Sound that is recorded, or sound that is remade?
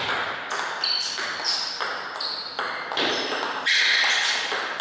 recorded